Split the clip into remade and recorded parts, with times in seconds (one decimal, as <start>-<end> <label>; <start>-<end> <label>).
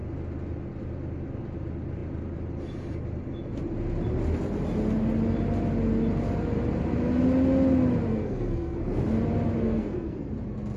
0.0-8.1 recorded; 8.1-9.0 remade; 9.0-9.6 recorded; 9.6-10.3 remade; 10.3-10.8 recorded